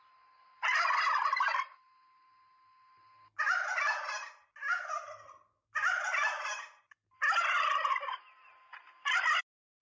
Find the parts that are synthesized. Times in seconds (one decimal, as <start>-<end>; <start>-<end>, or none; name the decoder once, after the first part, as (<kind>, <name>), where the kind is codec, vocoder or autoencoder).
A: none